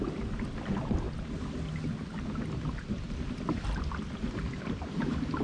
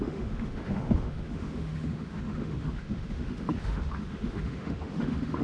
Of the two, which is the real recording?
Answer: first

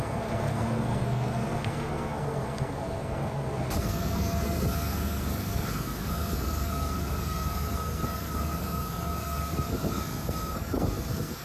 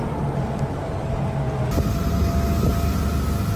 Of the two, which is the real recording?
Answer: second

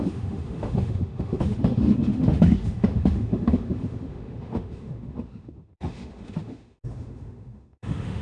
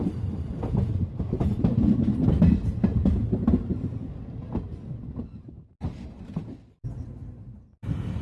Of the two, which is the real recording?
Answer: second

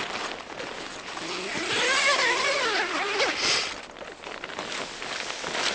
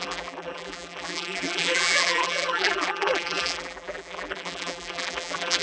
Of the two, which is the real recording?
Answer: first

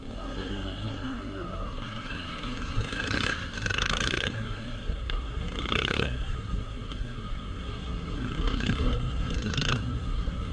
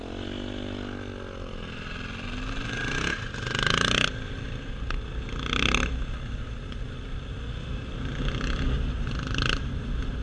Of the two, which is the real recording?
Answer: second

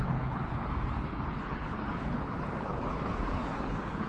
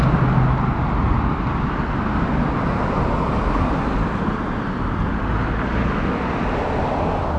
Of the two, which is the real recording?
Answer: second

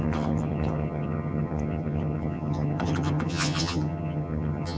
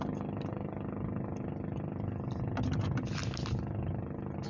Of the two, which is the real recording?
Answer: second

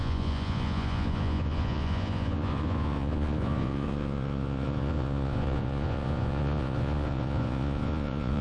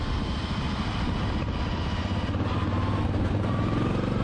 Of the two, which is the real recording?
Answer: second